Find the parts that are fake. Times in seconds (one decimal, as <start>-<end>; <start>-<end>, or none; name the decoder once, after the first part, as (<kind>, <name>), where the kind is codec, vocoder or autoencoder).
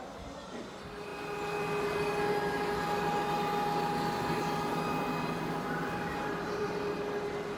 6.1-6.7 (vocoder, BigVGAN v2)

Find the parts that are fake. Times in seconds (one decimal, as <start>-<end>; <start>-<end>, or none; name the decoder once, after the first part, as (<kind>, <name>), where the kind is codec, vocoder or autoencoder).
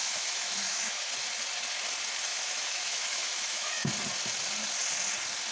0.0-1.1 (autoencoder, DAC-VAE); 2.3-3.9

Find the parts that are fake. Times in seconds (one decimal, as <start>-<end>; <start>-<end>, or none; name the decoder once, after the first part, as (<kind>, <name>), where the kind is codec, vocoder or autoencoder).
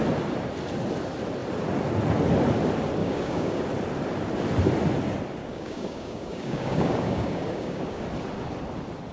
3.0-3.6 (codec, DAC); 5.4-8.0